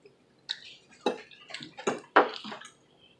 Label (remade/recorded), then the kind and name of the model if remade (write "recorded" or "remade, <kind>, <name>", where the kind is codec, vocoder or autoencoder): recorded